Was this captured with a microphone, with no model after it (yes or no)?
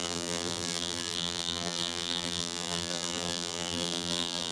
no